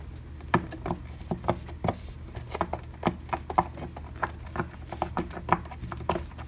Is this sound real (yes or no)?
yes